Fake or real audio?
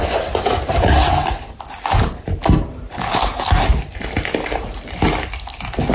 real